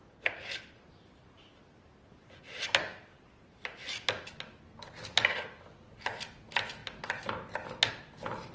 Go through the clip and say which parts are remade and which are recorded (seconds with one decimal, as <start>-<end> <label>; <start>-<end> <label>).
0.0-8.5 recorded